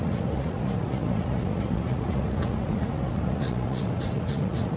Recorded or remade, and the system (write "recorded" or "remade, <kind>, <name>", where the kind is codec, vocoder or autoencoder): remade, vocoder, Vocos